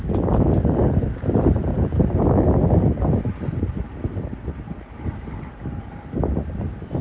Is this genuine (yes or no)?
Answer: yes